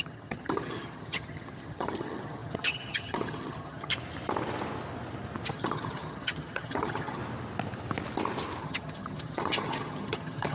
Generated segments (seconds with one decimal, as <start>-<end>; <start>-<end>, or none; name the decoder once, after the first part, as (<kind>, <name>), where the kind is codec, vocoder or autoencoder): 0.0-3.9 (vocoder, HiFi-GAN); 5.5-7.2; 8.6-10.5